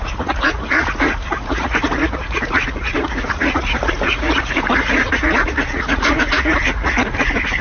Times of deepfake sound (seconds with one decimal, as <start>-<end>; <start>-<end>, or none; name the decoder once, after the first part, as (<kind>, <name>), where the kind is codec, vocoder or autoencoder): 0.0-7.6 (vocoder, Vocos)